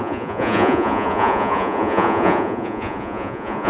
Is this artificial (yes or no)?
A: yes